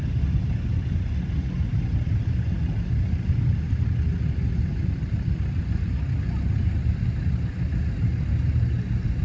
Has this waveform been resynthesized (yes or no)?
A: no